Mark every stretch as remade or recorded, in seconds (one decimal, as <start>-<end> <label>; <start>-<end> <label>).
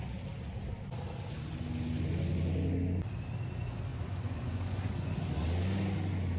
0.0-3.9 recorded; 3.9-5.1 remade; 5.1-6.4 recorded